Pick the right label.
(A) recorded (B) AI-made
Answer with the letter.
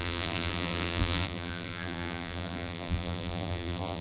B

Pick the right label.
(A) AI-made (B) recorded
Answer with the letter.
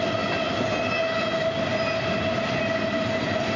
B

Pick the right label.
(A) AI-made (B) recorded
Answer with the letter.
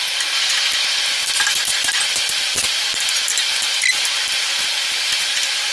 B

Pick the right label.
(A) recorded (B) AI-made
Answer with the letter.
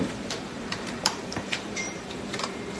B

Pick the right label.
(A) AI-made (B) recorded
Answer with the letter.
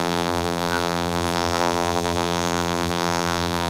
A